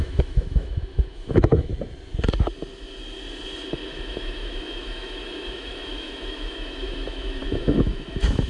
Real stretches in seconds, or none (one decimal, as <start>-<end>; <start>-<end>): 1.7-3.9